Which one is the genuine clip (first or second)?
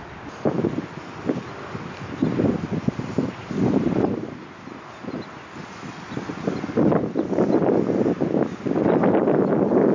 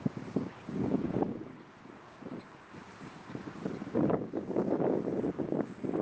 first